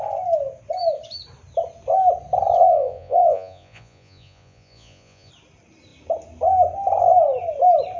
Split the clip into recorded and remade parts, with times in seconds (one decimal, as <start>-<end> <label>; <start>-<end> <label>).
0.0-2.6 recorded; 2.6-5.3 remade; 5.3-8.0 recorded